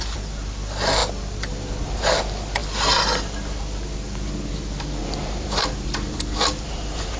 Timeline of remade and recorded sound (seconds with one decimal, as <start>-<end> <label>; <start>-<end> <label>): 0.0-5.0 recorded; 5.0-7.2 remade